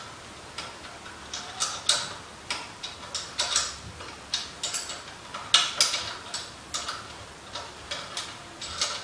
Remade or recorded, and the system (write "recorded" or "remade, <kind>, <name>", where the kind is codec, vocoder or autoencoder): recorded